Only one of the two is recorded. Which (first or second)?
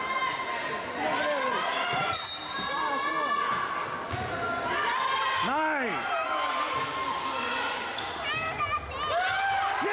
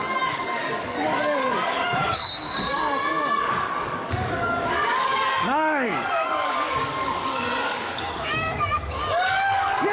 first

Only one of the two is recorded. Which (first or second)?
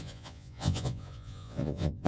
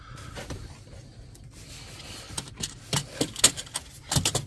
second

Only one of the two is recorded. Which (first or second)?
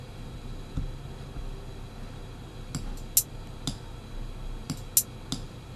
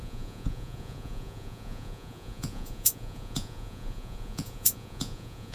first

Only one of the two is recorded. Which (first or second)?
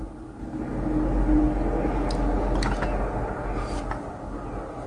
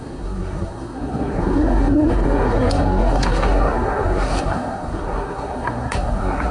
first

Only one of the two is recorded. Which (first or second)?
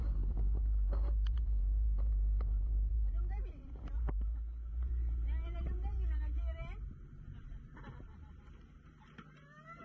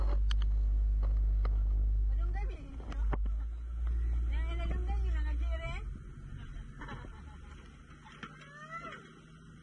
second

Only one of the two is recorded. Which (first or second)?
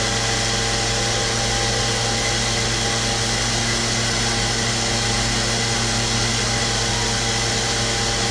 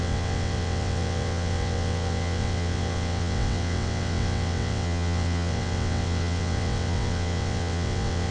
first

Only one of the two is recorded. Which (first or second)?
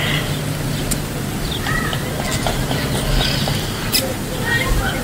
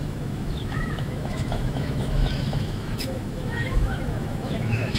first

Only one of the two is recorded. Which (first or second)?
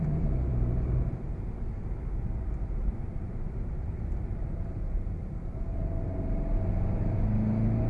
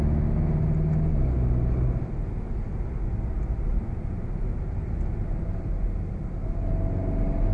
second